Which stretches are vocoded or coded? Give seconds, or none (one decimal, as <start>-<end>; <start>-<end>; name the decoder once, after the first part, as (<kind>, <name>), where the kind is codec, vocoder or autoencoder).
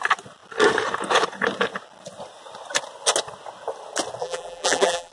4.2-5.1 (vocoder, BigVGAN v2)